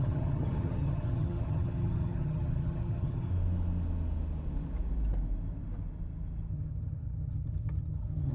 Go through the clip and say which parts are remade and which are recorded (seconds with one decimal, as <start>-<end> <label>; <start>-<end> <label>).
0.0-3.3 remade; 3.3-6.5 recorded; 6.5-8.3 remade